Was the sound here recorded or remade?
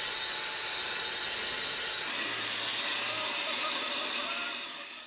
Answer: recorded